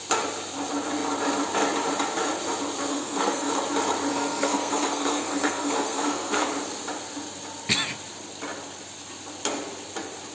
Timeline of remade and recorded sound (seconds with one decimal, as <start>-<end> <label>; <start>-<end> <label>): 0.0-2.9 recorded; 2.9-3.5 remade; 3.5-4.1 recorded; 4.1-6.5 remade; 6.5-10.3 recorded